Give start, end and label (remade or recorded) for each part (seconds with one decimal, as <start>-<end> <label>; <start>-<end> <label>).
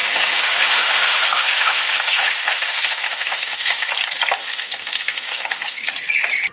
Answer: 0.0-3.9 remade; 3.9-4.4 recorded; 4.4-5.9 remade; 5.9-6.5 recorded